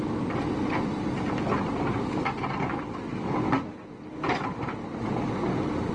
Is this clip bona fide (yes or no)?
yes